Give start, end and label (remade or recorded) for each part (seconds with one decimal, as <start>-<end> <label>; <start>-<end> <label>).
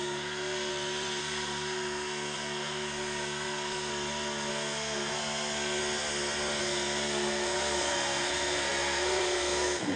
0.0-0.7 remade; 0.7-1.2 recorded; 1.2-3.9 remade; 3.9-4.5 recorded; 4.5-5.8 remade; 5.8-6.6 recorded; 6.6-10.0 remade